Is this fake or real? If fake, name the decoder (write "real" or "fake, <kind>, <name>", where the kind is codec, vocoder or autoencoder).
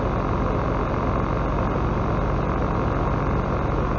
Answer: real